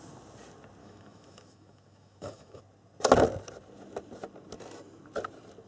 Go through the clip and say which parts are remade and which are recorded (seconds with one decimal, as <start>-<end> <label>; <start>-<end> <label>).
0.0-0.8 recorded; 0.8-2.6 remade; 2.6-5.7 recorded